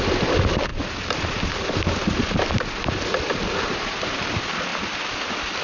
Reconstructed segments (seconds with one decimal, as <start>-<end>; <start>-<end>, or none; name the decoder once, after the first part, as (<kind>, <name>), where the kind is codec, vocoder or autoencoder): none